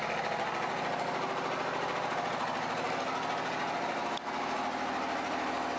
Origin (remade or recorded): recorded